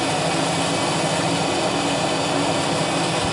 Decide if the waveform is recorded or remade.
recorded